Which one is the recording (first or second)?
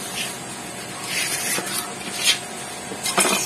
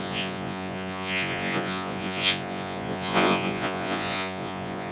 first